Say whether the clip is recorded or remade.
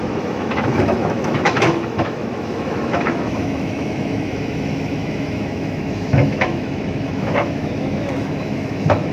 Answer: remade